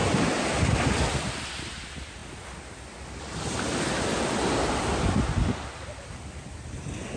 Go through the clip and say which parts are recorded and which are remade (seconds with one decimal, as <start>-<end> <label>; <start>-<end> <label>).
0.0-7.2 recorded